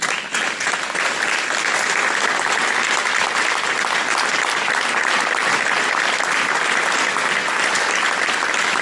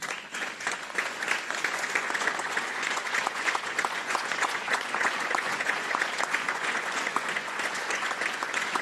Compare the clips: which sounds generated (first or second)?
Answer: second